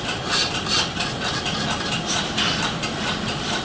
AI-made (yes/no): no